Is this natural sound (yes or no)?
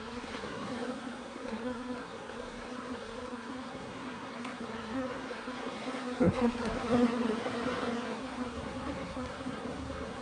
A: no